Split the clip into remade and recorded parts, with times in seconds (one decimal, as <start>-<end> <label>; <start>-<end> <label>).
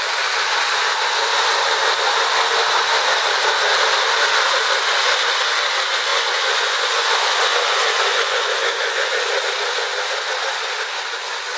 0.0-6.1 recorded; 6.1-9.4 remade; 9.4-11.6 recorded